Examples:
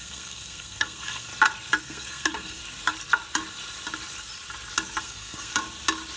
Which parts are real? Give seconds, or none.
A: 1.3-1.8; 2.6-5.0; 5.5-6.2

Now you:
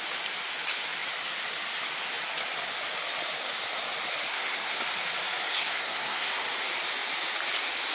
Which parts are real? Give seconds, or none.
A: 0.0-4.3; 4.8-5.5; 6.3-7.9

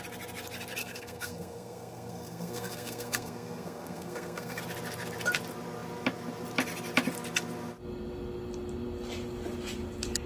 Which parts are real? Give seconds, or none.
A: 0.0-0.8; 4.6-10.3

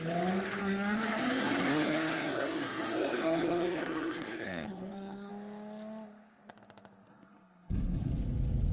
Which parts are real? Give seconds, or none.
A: 0.0-0.6; 5.3-7.1; 8.1-8.7

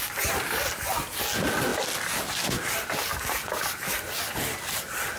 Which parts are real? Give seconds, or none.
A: 0.0-5.2

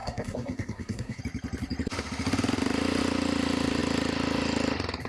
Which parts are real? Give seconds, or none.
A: 1.2-5.1

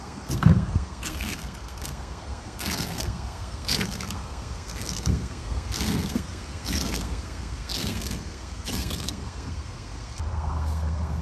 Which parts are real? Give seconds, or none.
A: none

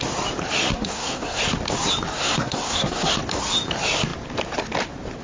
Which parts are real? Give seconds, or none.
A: 0.0-0.7; 1.4-2.1; 3.1-5.2